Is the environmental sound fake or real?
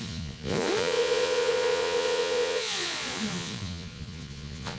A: fake